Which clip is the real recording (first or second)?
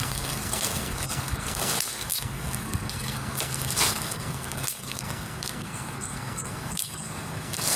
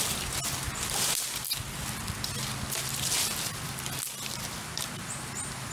second